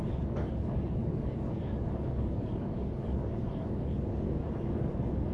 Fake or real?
fake